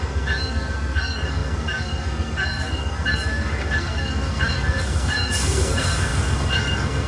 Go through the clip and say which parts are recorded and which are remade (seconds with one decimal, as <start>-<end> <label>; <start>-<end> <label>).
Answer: 0.0-7.1 remade

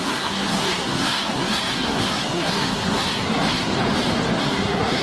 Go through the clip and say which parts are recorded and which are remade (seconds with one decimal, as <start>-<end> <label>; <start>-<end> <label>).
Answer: 0.0-3.7 remade; 3.7-4.4 recorded; 4.4-5.0 remade

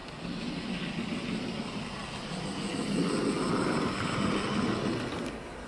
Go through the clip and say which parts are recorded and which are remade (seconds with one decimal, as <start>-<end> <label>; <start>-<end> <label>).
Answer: 0.0-5.7 recorded

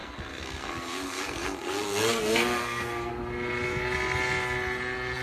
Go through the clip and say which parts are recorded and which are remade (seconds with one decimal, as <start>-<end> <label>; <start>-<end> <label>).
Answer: 0.0-3.1 remade; 3.1-5.2 recorded

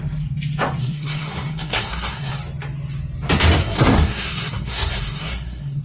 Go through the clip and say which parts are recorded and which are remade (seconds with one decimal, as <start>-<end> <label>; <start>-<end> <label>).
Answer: 0.0-0.8 recorded; 0.8-2.3 remade; 2.3-3.6 recorded; 3.6-5.8 remade

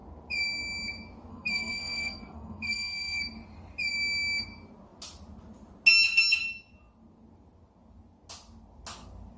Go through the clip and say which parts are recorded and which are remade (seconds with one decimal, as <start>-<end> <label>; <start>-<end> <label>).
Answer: 0.0-1.3 recorded; 1.3-3.2 remade; 3.2-9.4 recorded

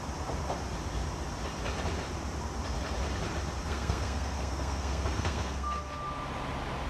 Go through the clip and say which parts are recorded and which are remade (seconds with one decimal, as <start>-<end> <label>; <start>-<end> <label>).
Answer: 0.0-3.6 recorded; 3.6-5.8 remade; 5.8-6.9 recorded

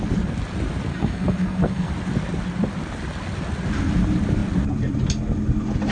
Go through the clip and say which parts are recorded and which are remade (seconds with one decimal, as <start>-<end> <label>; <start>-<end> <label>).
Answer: 0.0-0.9 recorded; 0.9-1.9 remade; 1.9-5.9 recorded